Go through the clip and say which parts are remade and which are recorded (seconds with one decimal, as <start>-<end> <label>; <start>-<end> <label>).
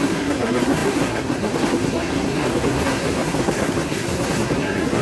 0.0-5.0 remade